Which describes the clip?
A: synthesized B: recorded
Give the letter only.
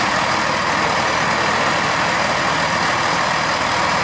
B